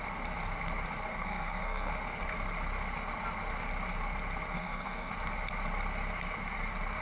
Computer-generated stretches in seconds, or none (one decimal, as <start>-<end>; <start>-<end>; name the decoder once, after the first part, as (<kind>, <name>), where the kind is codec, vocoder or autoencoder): 1.1-1.9 (codec, SNAC); 4.5-5.1